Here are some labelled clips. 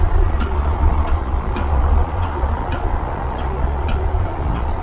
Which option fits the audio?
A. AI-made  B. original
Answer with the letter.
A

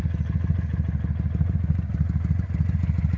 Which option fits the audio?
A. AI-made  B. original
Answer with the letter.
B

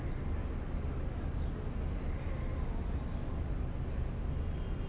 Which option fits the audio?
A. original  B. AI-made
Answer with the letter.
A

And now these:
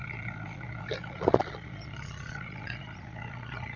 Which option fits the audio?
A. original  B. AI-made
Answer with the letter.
B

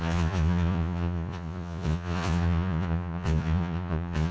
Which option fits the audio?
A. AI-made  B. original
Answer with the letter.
A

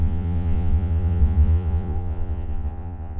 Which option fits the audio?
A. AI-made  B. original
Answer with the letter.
A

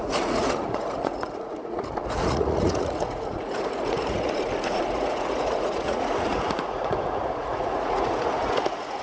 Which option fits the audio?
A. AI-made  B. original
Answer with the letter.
A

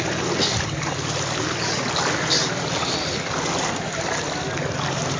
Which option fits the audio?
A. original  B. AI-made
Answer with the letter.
A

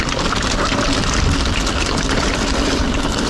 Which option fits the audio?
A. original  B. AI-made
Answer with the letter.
A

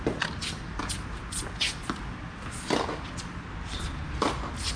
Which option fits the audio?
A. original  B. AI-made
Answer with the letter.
A